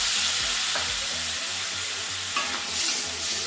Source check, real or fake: real